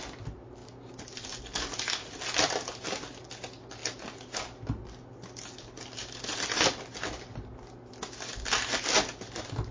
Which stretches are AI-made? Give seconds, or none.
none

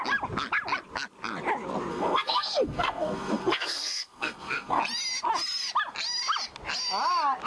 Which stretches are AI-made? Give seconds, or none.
1.9-4.8 (codec, SNAC)

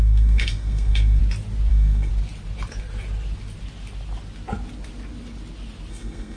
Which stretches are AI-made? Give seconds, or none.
0.0-1.2 (codec, SNAC); 1.7-2.1; 5.9-6.4